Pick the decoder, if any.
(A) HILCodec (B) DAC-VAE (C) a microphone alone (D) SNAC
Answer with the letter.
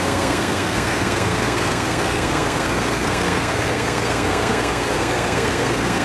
D